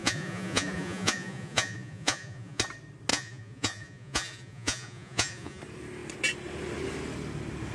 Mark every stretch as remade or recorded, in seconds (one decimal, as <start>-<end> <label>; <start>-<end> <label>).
0.0-2.6 remade; 2.6-3.1 recorded; 3.1-5.6 remade; 5.6-7.7 recorded